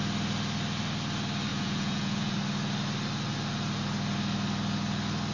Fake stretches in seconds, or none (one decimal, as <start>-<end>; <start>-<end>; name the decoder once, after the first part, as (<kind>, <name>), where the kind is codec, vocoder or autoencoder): 1.5-2.4 (vocoder, Vocos)